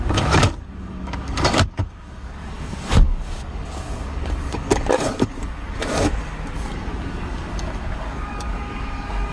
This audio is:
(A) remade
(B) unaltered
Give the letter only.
A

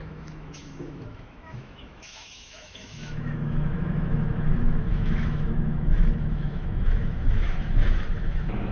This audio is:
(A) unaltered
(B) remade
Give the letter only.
B